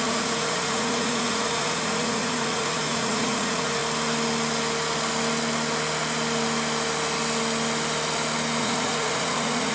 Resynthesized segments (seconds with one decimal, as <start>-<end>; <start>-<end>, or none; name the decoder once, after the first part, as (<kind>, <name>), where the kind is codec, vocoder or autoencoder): 0.0-3.8 (vocoder, Vocos); 8.6-9.7